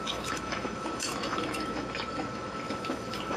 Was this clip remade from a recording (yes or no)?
yes